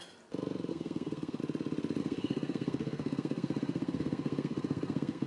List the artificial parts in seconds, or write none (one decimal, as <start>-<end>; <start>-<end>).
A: 0.7-1.4; 2.0-5.3